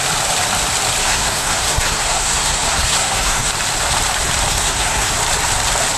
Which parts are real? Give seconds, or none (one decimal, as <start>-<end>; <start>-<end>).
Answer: 0.0-1.0; 3.5-4.5; 5.1-6.0